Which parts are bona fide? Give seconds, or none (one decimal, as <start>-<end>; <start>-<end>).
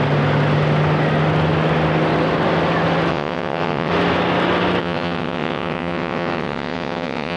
0.0-3.1; 3.9-4.8